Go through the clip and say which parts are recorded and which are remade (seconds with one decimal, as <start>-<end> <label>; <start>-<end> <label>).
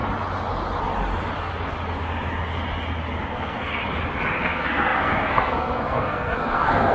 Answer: 0.0-3.3 recorded; 3.3-3.8 remade; 3.8-4.4 recorded; 4.4-6.9 remade